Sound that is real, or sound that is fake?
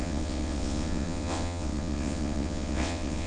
fake